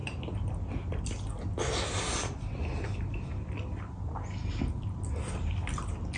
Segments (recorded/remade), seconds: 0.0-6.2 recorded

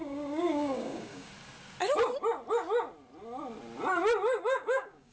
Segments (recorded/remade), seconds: 0.0-1.3 remade; 1.3-4.4 recorded; 4.4-5.1 remade

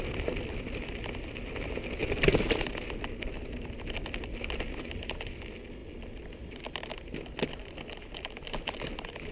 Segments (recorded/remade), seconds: 0.0-9.3 recorded

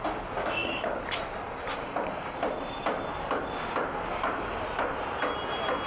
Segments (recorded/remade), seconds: 0.0-0.4 recorded; 0.4-1.0 remade; 1.0-5.9 recorded